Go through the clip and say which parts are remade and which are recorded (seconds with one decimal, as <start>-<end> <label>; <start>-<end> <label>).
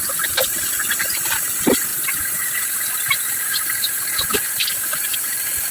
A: 0.0-5.7 recorded